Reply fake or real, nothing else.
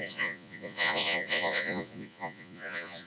fake